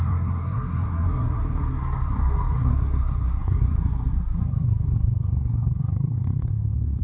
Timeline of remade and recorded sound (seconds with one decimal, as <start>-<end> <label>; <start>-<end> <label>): 0.0-7.0 remade